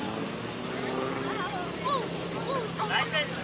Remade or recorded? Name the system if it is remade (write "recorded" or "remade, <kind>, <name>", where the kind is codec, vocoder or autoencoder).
recorded